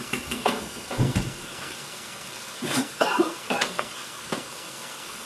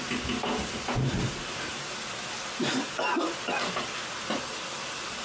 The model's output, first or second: first